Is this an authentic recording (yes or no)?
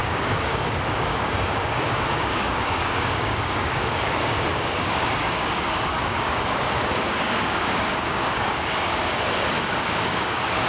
no